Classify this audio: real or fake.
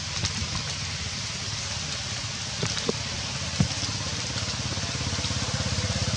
real